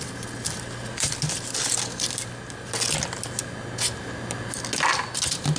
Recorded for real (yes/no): yes